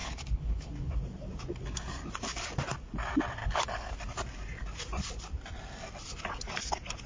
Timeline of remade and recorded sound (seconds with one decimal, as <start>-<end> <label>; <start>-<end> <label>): 0.0-0.9 remade; 0.9-3.4 recorded; 3.4-3.9 remade; 3.9-7.1 recorded